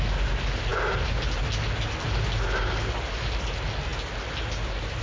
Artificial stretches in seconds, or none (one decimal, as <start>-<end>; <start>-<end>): none